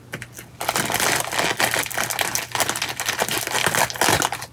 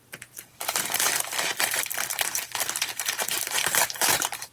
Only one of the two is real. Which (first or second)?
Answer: first